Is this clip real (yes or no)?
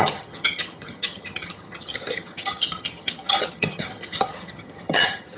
no